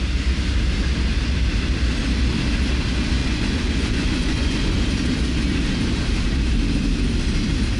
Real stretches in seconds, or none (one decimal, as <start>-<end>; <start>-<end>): 0.0-3.2; 4.8-7.8